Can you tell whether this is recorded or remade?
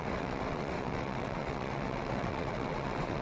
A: remade